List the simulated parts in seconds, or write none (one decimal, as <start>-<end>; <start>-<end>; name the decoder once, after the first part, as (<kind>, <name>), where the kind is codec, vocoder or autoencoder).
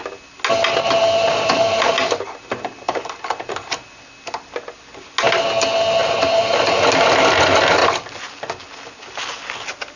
1.2-3.7 (vocoder, BigVGAN v2); 6.0-6.7